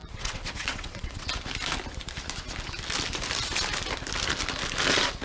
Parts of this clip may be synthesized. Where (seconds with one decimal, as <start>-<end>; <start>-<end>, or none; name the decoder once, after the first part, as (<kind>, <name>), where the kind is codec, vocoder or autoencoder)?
0.0-1.3 (vocoder, WaveNeXt)